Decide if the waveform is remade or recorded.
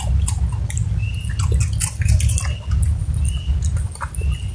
recorded